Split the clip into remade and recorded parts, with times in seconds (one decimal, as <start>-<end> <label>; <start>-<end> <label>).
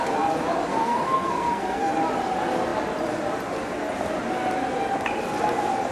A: 0.0-0.7 recorded; 0.7-1.9 remade; 1.9-5.9 recorded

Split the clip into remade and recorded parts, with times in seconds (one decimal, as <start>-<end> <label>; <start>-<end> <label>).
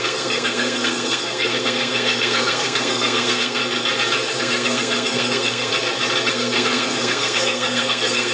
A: 0.0-3.6 remade; 3.6-4.4 recorded; 4.4-5.7 remade; 5.7-6.3 recorded; 6.3-8.3 remade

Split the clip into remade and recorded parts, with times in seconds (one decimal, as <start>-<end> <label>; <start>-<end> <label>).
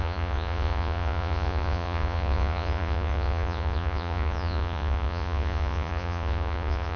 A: 0.0-7.0 remade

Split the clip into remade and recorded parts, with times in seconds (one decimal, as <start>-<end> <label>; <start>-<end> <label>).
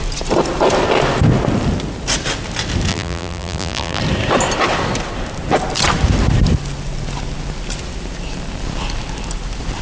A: 0.0-2.9 recorded; 2.9-4.0 remade; 4.0-9.8 recorded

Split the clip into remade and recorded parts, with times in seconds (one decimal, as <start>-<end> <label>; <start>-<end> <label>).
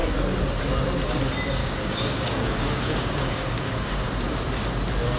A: 0.0-1.6 recorded; 1.6-4.1 remade; 4.1-5.2 recorded